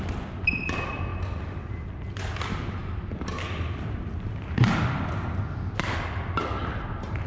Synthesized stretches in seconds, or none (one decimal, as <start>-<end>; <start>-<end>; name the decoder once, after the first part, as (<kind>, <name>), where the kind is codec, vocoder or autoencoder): none